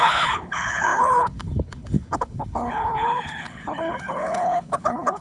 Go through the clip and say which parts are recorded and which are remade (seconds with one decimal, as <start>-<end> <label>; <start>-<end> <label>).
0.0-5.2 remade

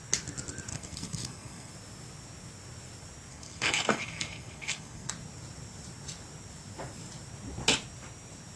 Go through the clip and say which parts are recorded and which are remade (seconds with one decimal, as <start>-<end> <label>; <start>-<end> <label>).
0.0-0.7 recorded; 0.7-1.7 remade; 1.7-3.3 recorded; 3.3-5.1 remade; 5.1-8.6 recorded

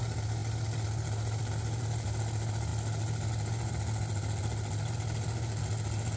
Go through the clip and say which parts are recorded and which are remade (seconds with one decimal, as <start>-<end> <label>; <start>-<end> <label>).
0.0-6.2 recorded

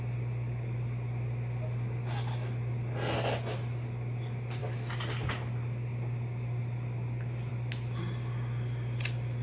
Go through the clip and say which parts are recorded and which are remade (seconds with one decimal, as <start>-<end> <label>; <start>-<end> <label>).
0.0-9.4 recorded

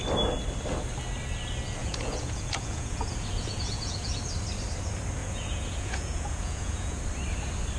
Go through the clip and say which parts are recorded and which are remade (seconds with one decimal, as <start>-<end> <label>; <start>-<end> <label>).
0.0-1.8 recorded; 1.8-4.2 remade; 4.2-5.2 recorded; 5.2-7.0 remade; 7.0-7.8 recorded